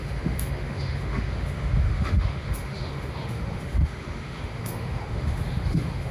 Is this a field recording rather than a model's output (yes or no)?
no